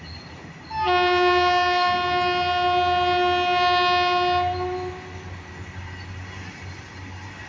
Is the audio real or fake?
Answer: real